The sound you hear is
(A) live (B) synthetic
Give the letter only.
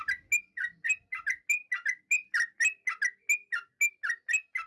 A